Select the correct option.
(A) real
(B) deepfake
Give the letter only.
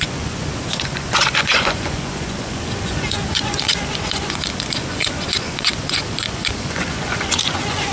B